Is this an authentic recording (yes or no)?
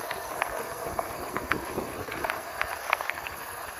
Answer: no